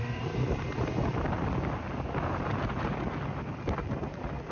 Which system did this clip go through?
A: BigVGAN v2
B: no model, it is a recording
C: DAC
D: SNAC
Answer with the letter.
B